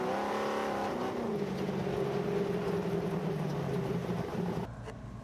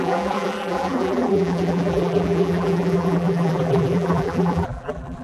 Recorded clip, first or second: first